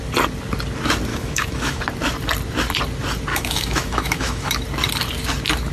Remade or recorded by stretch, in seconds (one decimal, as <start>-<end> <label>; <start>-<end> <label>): 0.0-1.1 recorded; 1.1-1.8 remade; 1.8-3.3 recorded; 3.3-4.6 remade; 4.6-5.7 recorded